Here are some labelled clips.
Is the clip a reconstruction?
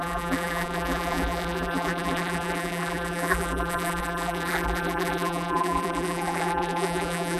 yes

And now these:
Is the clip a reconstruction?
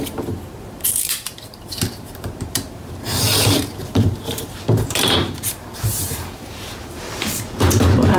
yes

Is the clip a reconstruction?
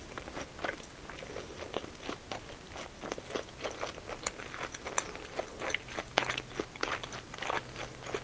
no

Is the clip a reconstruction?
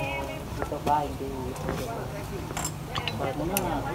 no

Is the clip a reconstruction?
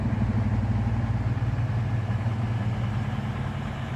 no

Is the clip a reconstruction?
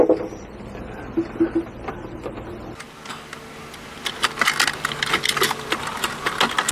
no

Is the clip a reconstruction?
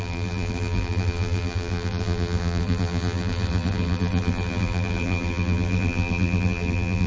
yes